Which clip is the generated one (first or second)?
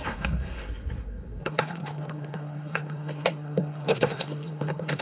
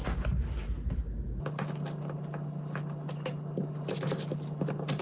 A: first